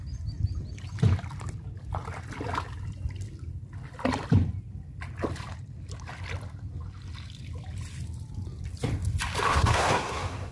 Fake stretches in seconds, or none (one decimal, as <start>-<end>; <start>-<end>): 9.5-10.5